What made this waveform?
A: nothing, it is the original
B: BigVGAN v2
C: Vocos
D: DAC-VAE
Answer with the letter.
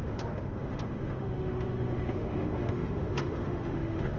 D